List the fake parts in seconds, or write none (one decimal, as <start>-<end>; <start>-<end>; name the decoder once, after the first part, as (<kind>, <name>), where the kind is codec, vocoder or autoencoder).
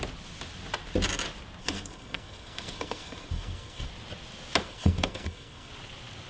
1.6-3.9 (codec, SNAC); 4.6-5.7